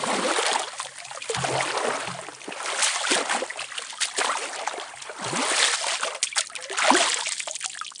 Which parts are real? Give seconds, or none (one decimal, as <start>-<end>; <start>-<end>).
0.0-8.0